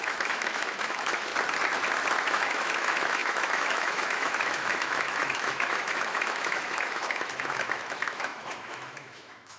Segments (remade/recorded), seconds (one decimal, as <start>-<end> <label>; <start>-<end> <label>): 0.0-1.3 remade; 1.3-2.2 recorded; 2.2-9.6 remade